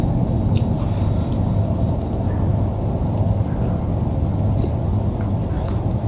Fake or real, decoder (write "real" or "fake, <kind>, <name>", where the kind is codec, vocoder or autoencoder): real